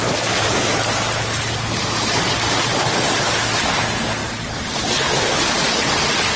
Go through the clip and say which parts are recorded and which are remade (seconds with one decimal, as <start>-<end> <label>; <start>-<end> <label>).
0.0-6.4 recorded